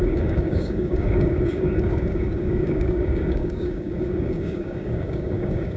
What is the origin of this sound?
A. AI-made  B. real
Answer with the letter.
A